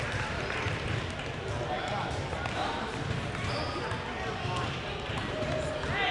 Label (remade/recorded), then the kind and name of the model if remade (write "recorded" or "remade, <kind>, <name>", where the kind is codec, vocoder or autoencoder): recorded